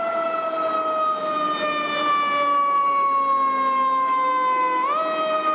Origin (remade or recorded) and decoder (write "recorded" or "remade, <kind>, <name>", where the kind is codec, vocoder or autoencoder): recorded